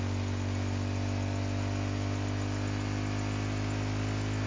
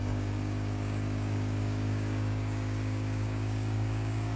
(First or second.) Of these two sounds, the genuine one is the first